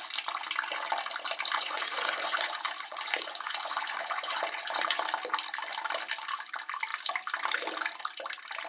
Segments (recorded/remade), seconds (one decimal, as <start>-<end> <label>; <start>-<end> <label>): 0.0-1.6 recorded; 1.6-5.0 remade; 5.0-8.7 recorded

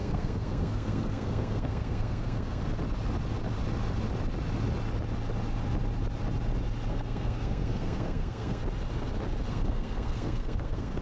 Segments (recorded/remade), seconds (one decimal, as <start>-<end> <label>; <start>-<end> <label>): 0.0-2.6 remade; 2.6-6.9 recorded; 6.9-8.6 remade; 8.6-9.5 recorded; 9.5-11.0 remade

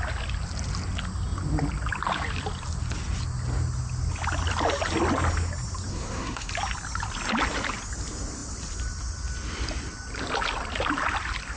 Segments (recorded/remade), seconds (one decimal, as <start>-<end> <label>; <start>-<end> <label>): 0.0-5.9 recorded; 5.9-6.5 remade; 6.5-11.6 recorded

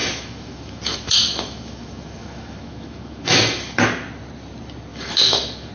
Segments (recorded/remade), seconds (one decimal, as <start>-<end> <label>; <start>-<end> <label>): 0.0-3.4 remade; 3.4-4.9 recorded; 4.9-5.7 remade